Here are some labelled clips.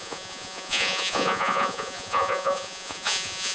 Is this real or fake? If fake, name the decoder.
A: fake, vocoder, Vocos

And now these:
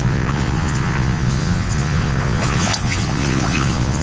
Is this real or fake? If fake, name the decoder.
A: fake, vocoder, Vocos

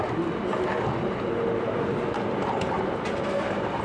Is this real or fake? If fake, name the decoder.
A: real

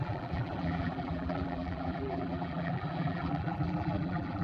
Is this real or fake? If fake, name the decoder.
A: fake, vocoder, BigVGAN v2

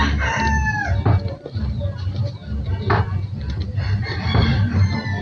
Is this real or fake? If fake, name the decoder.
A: real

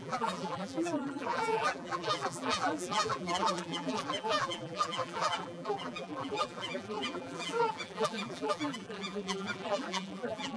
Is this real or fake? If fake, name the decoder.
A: fake, vocoder, BigVGAN v2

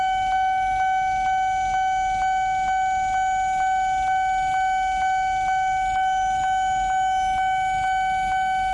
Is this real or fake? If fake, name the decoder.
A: real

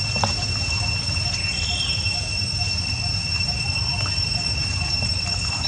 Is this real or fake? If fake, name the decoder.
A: real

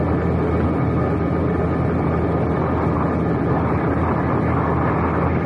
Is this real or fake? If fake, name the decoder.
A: real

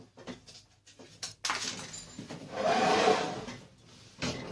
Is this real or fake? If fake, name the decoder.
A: real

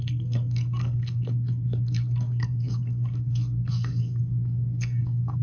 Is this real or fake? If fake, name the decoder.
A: fake, codec, SNAC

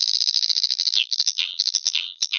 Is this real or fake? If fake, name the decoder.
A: fake, vocoder, BigVGAN v2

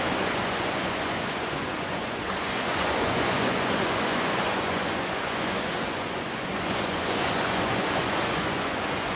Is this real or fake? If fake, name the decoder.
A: fake, vocoder, Vocos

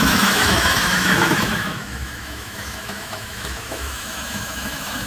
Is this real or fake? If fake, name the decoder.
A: fake, autoencoder, DAC-VAE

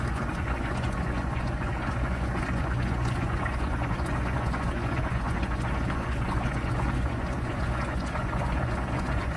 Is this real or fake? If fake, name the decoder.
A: fake, vocoder, Vocos